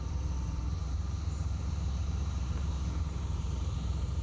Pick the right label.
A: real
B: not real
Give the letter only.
B